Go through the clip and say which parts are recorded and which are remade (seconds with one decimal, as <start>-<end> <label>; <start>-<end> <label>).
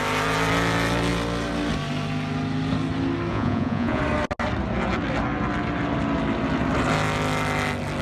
0.0-3.3 recorded; 3.3-4.0 remade; 4.0-8.0 recorded